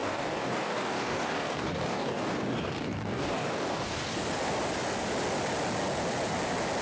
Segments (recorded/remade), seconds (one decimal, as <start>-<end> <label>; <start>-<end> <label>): 0.0-4.0 remade; 4.0-6.8 recorded